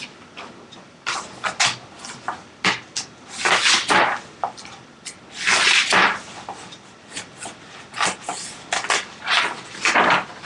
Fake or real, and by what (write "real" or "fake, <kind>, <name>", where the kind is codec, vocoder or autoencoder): real